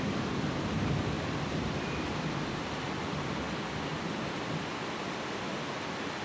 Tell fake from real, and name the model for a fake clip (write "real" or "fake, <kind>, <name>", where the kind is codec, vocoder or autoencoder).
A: real